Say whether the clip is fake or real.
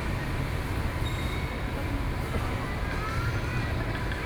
real